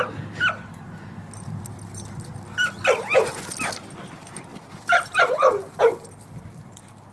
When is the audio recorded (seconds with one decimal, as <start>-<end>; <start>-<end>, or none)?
0.0-4.5; 5.7-7.1